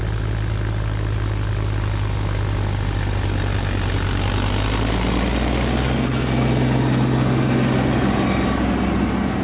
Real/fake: real